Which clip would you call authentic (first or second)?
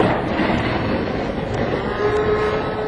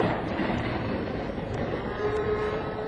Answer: first